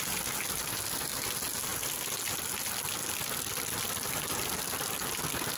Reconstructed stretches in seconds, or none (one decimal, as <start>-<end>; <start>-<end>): none